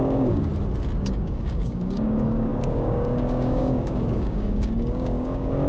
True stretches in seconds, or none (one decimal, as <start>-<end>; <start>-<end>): 0.5-1.0